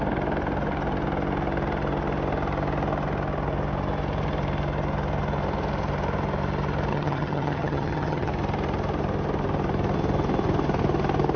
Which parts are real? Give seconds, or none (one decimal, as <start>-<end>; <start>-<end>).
0.0-6.9; 8.3-11.4